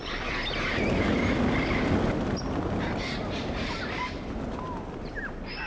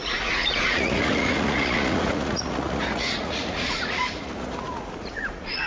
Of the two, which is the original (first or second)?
first